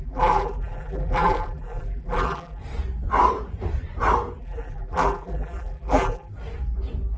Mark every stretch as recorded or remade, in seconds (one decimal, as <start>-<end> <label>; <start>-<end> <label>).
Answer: 0.0-2.6 remade; 2.6-4.4 recorded; 4.4-6.3 remade; 6.3-7.2 recorded